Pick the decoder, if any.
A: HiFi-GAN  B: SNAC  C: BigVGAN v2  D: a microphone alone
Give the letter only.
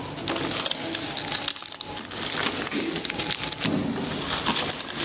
D